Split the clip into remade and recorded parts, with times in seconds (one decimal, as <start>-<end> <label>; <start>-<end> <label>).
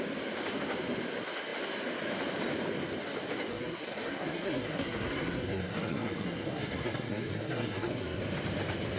0.0-3.5 recorded; 3.5-8.2 remade; 8.2-9.0 recorded